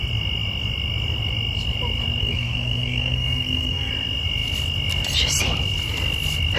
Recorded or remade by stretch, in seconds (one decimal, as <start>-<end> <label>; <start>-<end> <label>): 0.0-2.2 recorded; 2.2-3.9 remade; 3.9-6.6 recorded